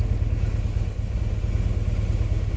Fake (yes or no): no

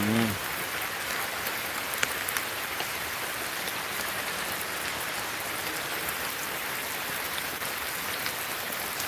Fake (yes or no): no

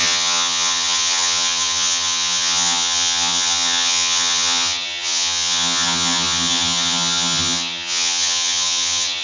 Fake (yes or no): yes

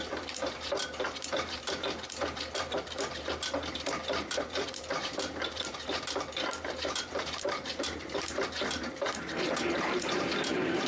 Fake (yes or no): yes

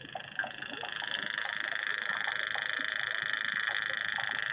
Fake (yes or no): no